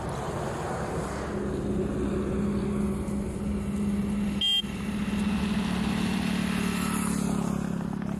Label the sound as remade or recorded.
recorded